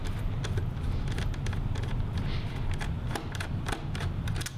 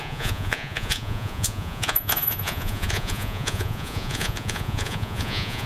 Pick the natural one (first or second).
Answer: first